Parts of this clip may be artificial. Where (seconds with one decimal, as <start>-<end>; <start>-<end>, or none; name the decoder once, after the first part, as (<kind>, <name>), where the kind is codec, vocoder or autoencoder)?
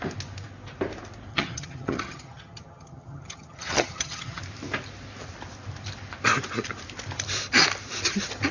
1.3-4.4 (vocoder, HiFi-GAN)